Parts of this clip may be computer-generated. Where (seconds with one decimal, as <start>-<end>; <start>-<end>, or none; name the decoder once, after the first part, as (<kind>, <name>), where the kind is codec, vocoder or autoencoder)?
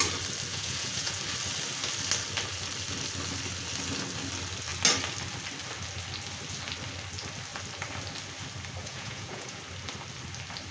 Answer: 0.5-1.2 (vocoder, Vocos); 8.8-9.6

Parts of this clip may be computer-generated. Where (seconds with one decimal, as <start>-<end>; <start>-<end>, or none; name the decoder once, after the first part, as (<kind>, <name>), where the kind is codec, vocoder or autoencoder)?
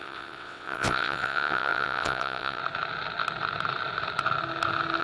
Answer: 0.0-2.6 (vocoder, WaveNeXt)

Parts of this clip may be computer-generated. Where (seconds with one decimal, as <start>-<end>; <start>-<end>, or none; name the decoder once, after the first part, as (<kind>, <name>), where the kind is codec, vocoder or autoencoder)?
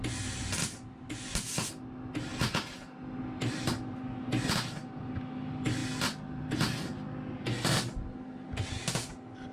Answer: none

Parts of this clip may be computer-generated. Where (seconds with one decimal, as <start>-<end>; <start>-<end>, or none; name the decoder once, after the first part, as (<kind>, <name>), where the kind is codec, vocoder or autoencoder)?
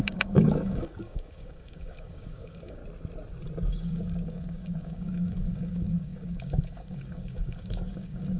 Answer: 0.0-2.8 (codec, DAC); 3.7-8.4